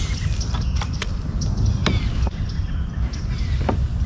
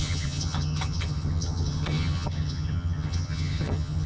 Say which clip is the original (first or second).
first